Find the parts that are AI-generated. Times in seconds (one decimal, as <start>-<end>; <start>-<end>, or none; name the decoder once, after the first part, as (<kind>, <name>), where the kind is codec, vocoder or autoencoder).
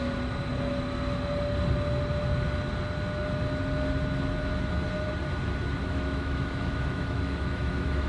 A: 5.8-8.1 (autoencoder, DAC-VAE)